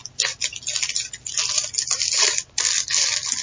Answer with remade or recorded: recorded